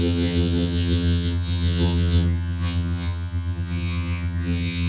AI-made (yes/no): yes